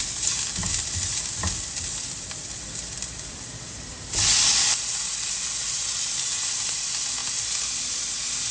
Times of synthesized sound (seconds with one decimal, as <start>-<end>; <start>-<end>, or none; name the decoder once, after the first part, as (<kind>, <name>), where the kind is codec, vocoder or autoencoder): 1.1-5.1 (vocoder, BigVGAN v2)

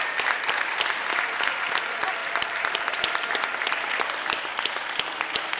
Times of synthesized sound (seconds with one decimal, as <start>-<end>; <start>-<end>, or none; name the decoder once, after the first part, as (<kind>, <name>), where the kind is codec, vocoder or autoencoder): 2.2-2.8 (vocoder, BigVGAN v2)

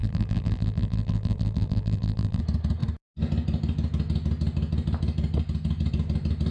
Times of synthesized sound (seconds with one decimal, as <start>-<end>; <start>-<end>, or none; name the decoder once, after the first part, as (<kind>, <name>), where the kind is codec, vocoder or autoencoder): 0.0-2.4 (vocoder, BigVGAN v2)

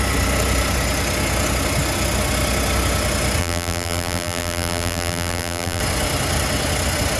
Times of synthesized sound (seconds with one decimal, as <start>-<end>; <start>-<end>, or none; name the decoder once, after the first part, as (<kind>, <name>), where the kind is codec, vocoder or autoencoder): 3.4-5.8 (vocoder, BigVGAN v2)

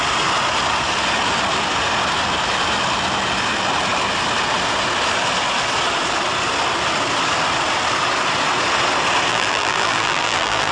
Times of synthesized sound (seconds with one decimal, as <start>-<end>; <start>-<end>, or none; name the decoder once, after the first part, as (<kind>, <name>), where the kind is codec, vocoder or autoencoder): 9.3-10.7 (vocoder, BigVGAN v2)

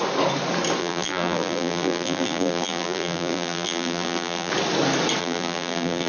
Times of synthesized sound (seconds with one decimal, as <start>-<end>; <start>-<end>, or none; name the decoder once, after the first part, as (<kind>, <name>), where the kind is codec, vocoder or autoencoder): 0.8-4.5 (vocoder, BigVGAN v2); 5.2-6.1

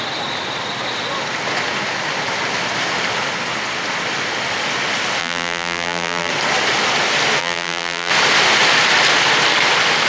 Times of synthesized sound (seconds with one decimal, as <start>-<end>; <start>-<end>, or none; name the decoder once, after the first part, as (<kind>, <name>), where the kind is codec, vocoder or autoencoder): 5.2-6.3 (vocoder, BigVGAN v2); 7.4-8.1